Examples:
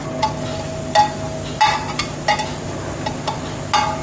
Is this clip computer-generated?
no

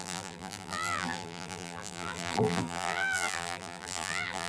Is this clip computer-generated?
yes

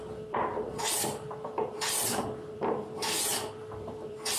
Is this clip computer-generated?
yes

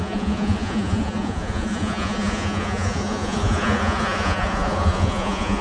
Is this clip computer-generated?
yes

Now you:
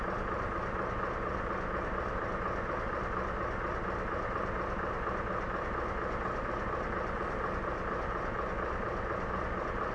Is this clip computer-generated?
no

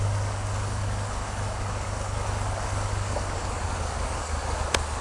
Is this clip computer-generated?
yes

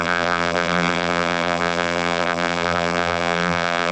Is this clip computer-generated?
yes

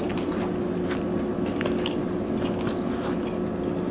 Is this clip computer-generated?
no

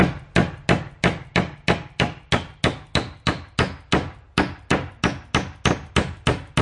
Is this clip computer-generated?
no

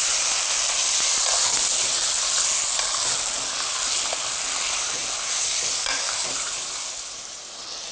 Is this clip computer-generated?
no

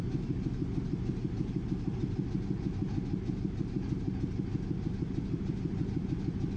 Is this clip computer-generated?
no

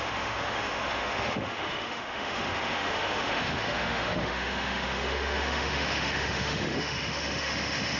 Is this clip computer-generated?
yes